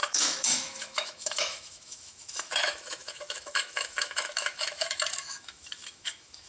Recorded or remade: remade